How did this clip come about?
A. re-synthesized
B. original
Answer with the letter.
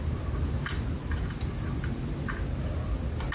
B